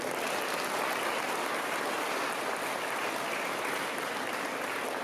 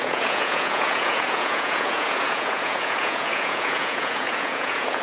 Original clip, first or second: first